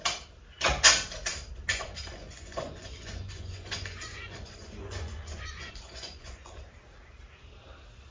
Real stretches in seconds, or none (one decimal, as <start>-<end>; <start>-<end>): 0.0-1.7; 6.6-8.1